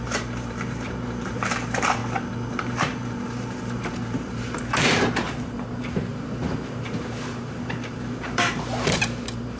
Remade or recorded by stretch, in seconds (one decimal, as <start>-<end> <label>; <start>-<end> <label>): 0.0-2.0 remade; 2.0-2.6 recorded; 2.6-9.6 remade